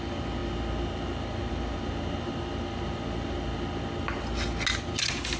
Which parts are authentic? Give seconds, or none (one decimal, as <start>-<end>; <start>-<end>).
0.0-5.4